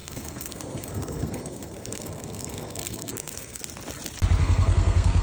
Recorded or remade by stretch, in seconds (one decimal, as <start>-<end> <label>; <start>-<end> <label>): 0.0-3.6 remade; 3.6-4.4 recorded; 4.4-5.2 remade